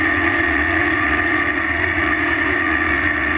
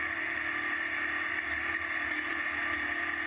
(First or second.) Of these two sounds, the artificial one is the first